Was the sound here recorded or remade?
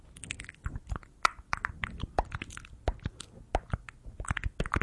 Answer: recorded